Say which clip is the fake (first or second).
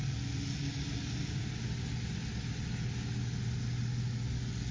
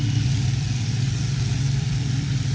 second